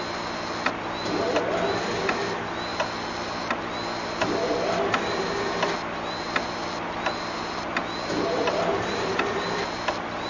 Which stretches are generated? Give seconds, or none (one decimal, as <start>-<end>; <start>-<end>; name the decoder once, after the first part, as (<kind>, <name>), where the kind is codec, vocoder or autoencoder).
8.4-9.6 (vocoder, BigVGAN v2)